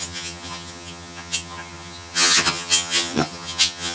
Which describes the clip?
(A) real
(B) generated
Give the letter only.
B